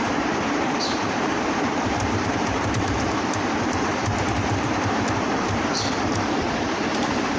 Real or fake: fake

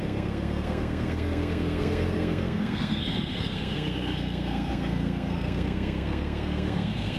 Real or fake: fake